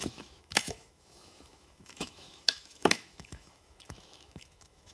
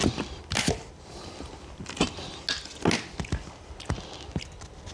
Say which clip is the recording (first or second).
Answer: second